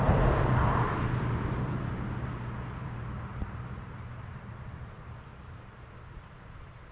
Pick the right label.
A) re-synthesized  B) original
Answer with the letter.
A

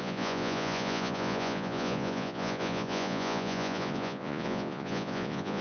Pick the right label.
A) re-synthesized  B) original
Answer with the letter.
A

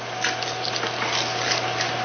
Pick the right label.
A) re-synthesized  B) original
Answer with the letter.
B